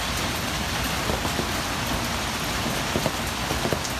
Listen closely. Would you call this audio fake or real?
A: real